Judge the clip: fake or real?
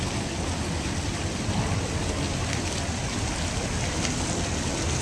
real